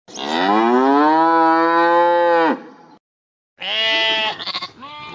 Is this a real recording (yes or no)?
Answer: yes